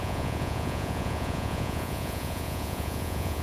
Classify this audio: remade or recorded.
remade